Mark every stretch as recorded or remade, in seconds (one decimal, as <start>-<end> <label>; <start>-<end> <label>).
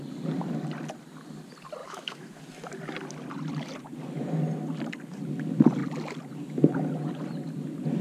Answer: 0.0-1.8 recorded; 1.8-2.4 remade; 2.4-8.0 recorded